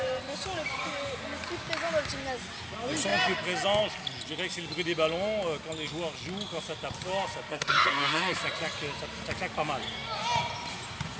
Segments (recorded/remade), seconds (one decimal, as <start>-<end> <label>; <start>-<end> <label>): 0.0-7.5 recorded; 7.5-8.4 remade; 8.4-11.2 recorded